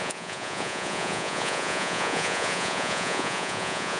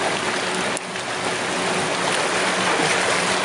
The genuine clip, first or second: second